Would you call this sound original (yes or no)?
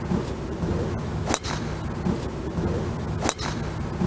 yes